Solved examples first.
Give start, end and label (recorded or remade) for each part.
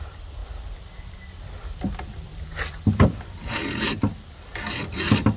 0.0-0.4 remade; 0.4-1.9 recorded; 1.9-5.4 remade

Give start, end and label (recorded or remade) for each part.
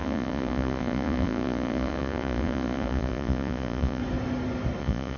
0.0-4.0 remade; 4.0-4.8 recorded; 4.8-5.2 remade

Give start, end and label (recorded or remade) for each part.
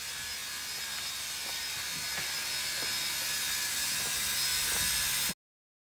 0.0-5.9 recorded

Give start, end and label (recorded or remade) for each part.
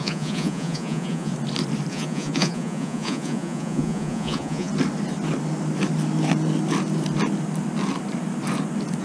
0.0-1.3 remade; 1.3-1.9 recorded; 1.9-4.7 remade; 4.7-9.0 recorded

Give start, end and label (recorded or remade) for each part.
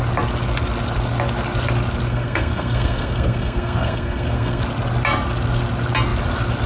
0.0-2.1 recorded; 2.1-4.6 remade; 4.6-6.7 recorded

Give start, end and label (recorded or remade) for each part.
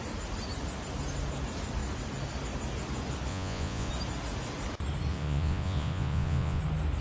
0.0-3.3 recorded; 3.3-3.9 remade; 3.9-5.1 recorded; 5.1-6.6 remade; 6.6-7.0 recorded